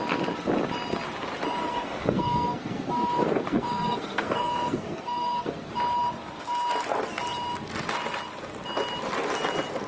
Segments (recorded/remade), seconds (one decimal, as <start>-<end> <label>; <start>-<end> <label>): 0.0-1.6 recorded; 1.6-5.7 remade; 5.7-9.9 recorded

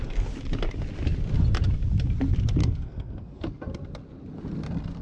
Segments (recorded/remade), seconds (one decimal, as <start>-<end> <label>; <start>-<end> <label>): 0.0-2.6 recorded; 2.6-3.6 remade; 3.6-5.0 recorded